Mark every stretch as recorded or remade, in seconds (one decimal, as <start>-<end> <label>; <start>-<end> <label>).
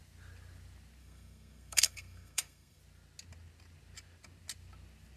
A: 0.0-1.0 recorded; 1.0-2.8 remade; 2.8-5.2 recorded